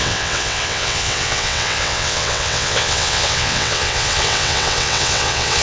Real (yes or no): no